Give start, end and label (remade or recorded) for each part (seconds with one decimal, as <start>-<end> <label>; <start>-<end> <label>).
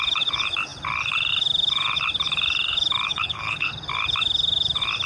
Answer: 0.0-3.1 recorded; 3.1-3.7 remade; 3.7-5.1 recorded